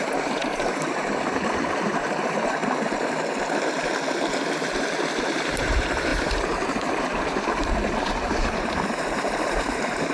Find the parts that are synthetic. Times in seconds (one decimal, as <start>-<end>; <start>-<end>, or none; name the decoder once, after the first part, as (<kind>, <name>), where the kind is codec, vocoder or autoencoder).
0.0-2.6 (vocoder, BigVGAN v2); 5.2-10.1